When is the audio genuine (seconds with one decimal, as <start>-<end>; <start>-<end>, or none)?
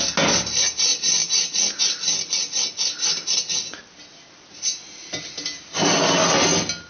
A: 0.0-6.9